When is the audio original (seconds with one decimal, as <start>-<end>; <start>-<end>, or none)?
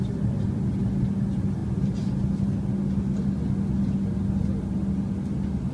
0.0-5.7